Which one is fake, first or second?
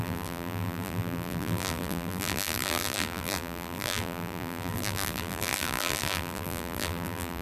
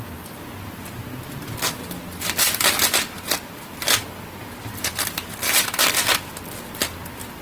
first